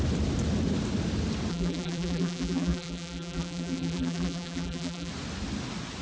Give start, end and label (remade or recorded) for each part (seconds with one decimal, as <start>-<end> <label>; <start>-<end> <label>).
0.0-1.5 recorded; 1.5-5.1 remade; 5.1-6.0 recorded